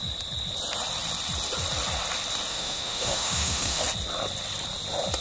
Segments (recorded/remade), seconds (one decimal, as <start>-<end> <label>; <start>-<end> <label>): 0.0-2.5 recorded; 2.5-3.8 remade; 3.8-5.2 recorded